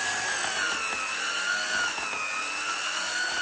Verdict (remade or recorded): recorded